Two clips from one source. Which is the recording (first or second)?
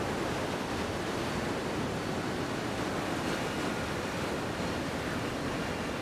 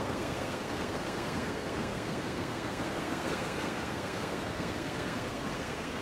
first